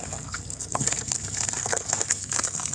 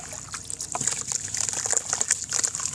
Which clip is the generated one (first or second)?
first